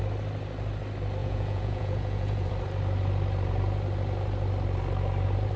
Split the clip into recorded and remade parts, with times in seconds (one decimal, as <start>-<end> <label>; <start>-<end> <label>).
0.0-1.2 recorded; 1.2-2.5 remade; 2.5-5.6 recorded